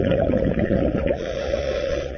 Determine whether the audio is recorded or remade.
remade